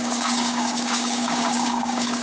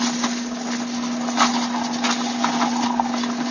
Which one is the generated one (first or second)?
first